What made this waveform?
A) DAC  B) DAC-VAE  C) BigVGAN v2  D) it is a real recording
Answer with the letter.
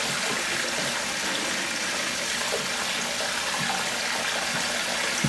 D